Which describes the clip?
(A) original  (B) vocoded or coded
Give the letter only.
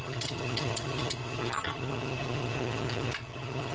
B